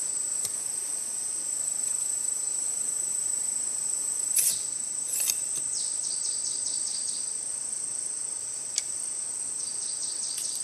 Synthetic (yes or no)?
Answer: yes